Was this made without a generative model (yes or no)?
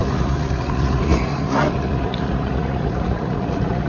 no